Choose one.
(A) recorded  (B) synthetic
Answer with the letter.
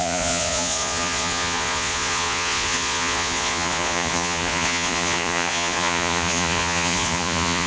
B